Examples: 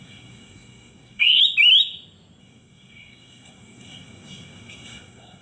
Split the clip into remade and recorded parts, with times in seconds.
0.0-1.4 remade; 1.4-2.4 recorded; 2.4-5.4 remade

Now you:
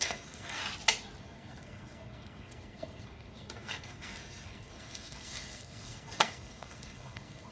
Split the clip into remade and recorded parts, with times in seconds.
0.0-0.6 remade; 0.6-1.2 recorded; 1.2-7.5 remade

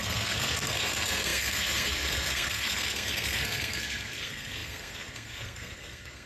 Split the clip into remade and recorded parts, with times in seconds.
0.0-6.3 remade